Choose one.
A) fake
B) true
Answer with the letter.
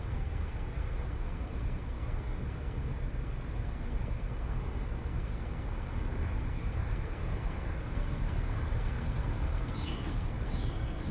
A